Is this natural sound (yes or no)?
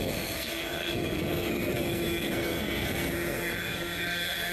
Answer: no